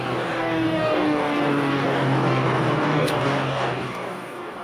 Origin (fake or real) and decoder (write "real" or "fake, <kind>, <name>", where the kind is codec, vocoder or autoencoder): fake, codec, DAC